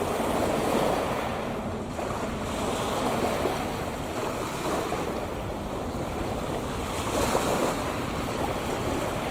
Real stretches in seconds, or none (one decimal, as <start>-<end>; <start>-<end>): 0.0-0.4; 1.2-9.3